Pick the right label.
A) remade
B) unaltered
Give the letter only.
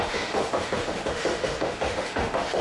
A